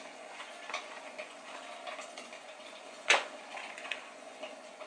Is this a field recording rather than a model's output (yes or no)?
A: no